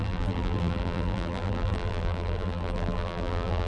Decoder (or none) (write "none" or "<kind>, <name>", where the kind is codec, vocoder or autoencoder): vocoder, BigVGAN v2